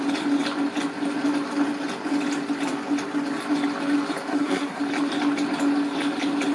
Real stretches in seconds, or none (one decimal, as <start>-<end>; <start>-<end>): 0.0-4.3; 4.8-6.5